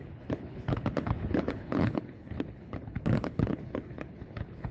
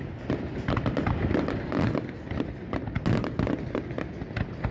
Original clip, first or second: second